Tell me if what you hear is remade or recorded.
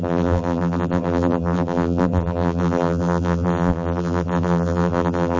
remade